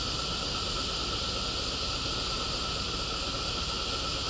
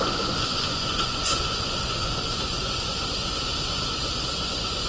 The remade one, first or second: second